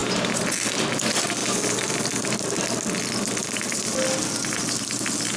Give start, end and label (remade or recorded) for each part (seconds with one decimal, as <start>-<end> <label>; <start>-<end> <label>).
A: 0.0-0.5 remade; 0.5-5.4 recorded